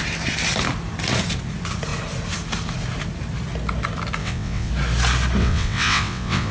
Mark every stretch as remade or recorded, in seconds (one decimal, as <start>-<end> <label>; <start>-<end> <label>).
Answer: 0.0-4.2 recorded; 4.2-4.7 remade; 4.7-5.4 recorded; 5.4-6.5 remade